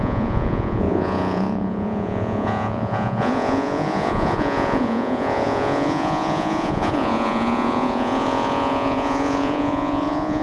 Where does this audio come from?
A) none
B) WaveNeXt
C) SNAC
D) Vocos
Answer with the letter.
D